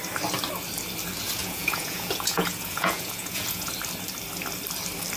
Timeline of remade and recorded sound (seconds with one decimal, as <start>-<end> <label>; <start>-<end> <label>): 0.0-1.4 recorded; 1.4-3.7 remade; 3.7-5.2 recorded